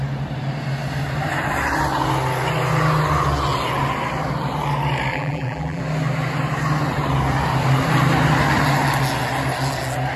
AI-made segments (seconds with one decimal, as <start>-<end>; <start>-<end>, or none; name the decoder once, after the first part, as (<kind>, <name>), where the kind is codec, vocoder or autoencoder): 5.1-5.8 (vocoder, BigVGAN v2)